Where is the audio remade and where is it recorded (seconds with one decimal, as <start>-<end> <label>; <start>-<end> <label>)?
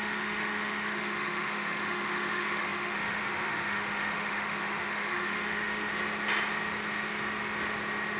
0.0-5.9 remade; 5.9-8.2 recorded